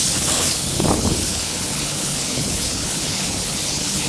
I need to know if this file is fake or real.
fake